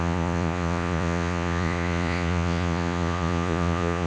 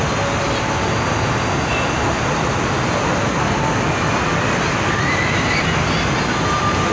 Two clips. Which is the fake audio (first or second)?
first